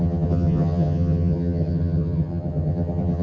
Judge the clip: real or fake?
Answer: fake